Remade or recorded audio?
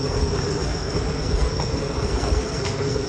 remade